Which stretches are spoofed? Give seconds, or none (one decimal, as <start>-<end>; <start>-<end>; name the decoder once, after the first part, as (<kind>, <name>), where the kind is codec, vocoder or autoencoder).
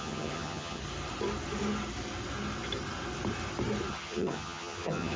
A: 0.0-0.8 (vocoder, HiFi-GAN); 3.9-5.2